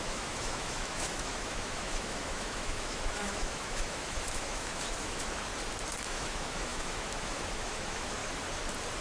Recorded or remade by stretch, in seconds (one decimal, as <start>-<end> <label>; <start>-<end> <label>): 0.0-5.5 remade; 5.5-6.0 recorded; 6.0-8.2 remade; 8.2-9.0 recorded